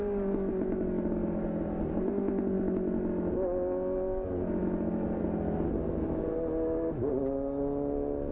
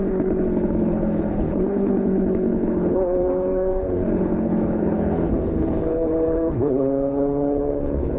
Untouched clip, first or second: first